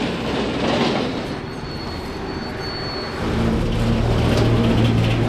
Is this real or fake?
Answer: real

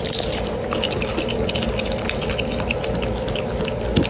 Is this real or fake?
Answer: real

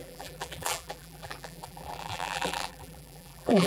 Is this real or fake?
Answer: fake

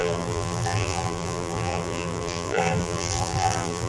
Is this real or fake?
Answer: fake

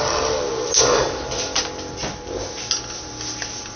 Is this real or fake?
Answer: real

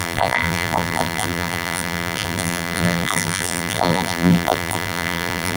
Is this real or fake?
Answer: fake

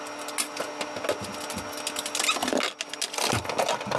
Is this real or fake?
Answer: real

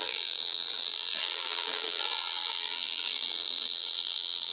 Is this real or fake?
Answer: fake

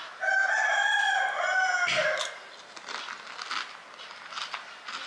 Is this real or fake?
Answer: real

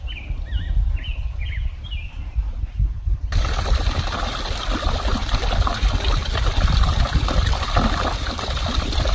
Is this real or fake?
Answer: fake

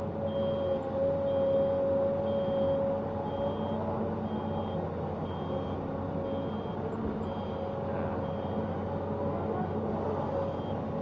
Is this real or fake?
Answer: real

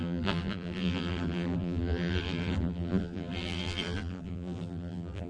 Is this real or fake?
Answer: fake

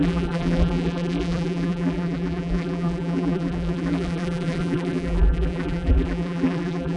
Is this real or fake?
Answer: fake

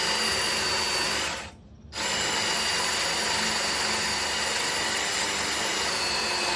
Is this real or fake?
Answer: real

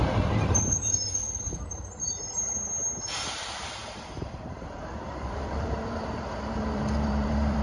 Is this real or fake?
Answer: fake